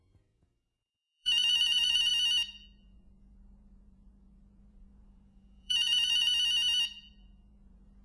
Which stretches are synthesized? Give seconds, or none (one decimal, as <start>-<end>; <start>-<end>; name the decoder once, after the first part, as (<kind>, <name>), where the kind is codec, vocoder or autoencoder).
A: 0.0-2.1 (vocoder, Vocos); 2.8-6.3; 7.1-8.0